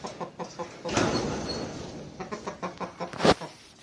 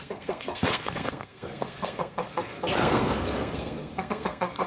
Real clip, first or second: first